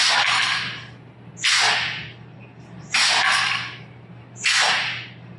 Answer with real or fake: real